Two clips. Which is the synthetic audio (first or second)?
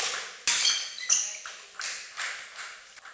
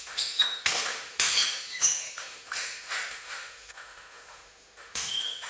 second